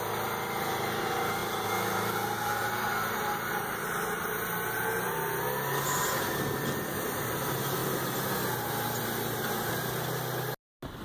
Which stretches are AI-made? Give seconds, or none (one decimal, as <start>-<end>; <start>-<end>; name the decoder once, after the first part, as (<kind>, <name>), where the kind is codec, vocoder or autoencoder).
none